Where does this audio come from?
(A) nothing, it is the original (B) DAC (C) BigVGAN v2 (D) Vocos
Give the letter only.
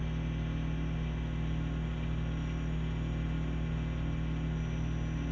A